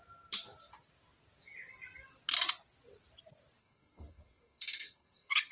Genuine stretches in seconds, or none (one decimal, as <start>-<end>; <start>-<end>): 0.0-3.6